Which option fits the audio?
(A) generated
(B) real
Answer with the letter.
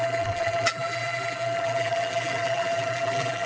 A